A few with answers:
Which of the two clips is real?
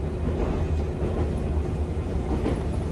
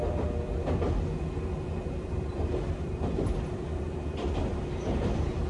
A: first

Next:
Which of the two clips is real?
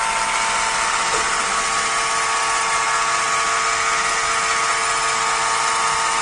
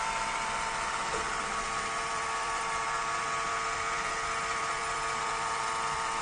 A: first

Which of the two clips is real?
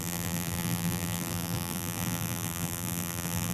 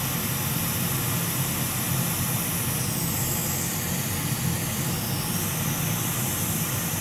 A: second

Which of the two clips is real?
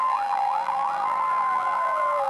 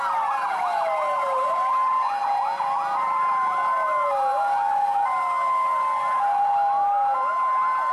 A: second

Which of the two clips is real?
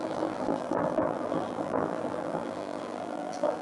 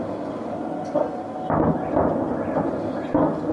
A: second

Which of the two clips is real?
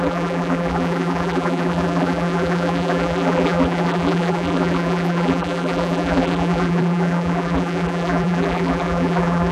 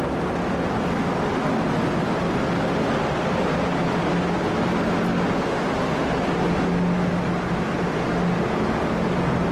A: second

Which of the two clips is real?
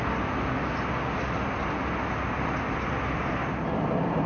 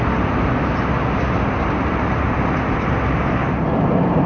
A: first